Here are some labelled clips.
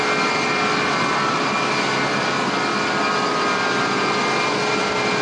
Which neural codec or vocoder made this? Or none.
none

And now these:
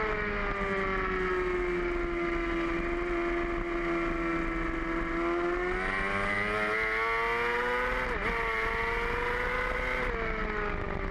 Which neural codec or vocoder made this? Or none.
none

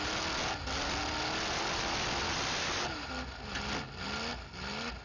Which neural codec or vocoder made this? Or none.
none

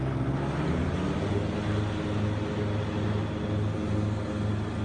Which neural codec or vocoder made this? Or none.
none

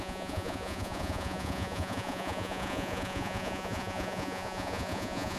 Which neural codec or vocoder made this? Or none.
vocoder, Vocos